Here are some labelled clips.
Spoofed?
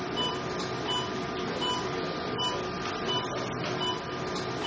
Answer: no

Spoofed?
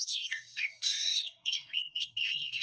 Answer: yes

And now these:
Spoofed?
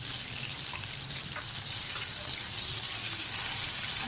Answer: no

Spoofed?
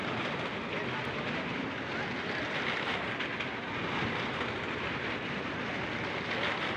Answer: no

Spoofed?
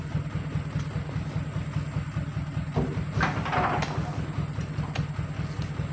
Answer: no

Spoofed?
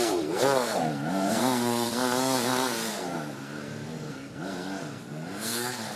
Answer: yes